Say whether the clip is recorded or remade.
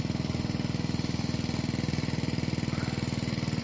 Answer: recorded